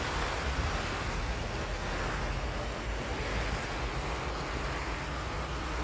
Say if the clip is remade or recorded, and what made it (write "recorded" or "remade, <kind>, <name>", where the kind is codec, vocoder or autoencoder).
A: recorded